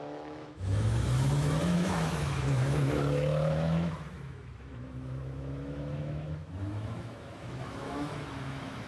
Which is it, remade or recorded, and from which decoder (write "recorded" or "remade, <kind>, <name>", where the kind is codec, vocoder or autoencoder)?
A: remade, autoencoder, DAC-VAE